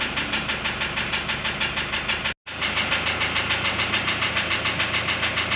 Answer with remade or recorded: recorded